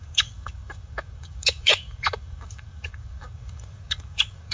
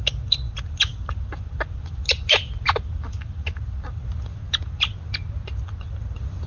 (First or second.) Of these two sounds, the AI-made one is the first